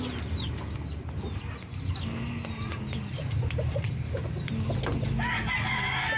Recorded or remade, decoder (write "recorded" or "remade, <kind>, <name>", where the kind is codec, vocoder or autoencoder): recorded